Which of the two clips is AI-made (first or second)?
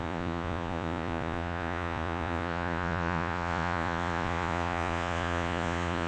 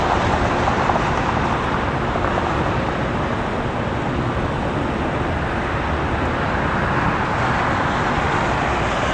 first